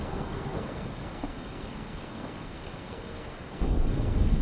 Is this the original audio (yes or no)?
no